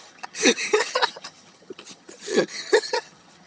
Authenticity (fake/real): fake